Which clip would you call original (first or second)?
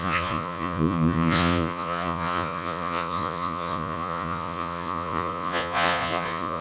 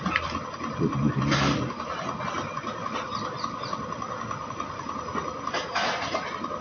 second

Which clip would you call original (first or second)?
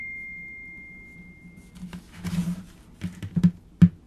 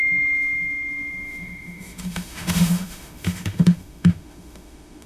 first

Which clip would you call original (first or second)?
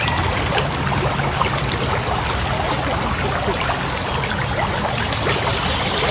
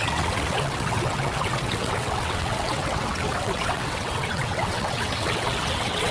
first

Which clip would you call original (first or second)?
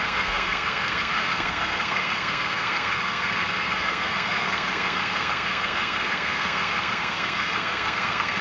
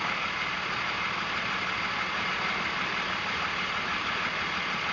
second